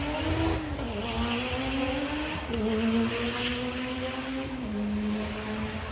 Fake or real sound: real